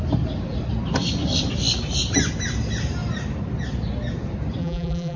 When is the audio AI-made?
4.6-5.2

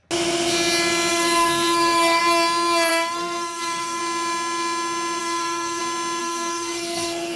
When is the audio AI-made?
1.1-2.2; 2.9-4.0; 5.2-5.8; 6.2-7.4

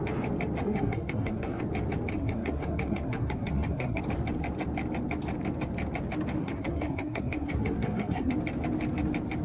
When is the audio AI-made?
0.6-1.6; 2.1-4.0; 6.4-8.3

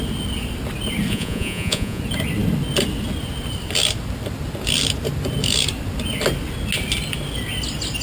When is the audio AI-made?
1.1-2.0

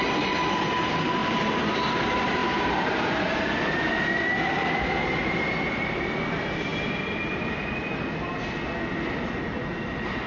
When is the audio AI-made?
none

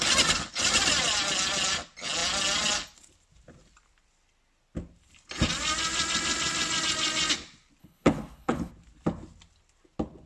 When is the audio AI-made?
7.8-8.7

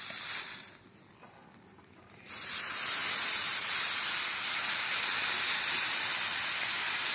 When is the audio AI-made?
none